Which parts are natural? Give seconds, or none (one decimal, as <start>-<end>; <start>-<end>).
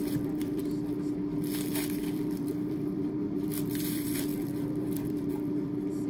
0.6-2.0